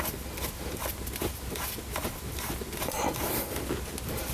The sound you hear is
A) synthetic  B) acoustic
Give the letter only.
B